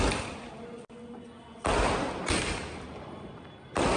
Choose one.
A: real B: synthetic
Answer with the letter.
A